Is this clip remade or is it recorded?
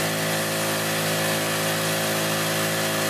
recorded